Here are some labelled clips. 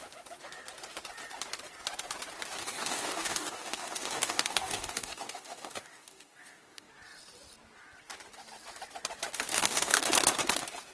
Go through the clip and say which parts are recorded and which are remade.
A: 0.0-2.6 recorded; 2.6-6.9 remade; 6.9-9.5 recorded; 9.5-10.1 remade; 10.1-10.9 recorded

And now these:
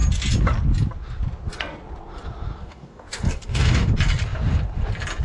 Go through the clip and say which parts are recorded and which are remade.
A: 0.0-2.6 recorded; 2.6-3.9 remade; 3.9-5.2 recorded

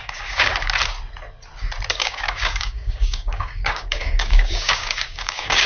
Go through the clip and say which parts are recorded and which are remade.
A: 0.0-0.5 remade; 0.5-1.9 recorded; 1.9-5.7 remade